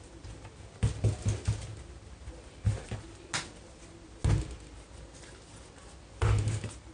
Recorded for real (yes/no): yes